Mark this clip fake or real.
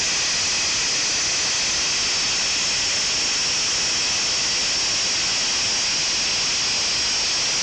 real